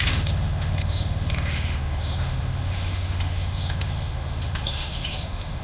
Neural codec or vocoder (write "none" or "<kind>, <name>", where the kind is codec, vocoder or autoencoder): autoencoder, DAC-VAE